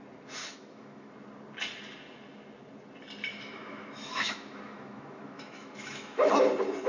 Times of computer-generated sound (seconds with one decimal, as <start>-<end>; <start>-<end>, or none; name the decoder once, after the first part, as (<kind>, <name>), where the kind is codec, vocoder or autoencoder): 0.4-1.1 (autoencoder, DAC-VAE); 3.3-6.3

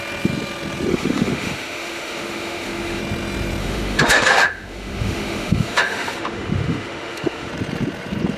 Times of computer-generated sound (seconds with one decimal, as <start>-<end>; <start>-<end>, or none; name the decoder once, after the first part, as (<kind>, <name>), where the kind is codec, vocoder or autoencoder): 0.9-3.0 (autoencoder, DAC-VAE); 3.6-7.5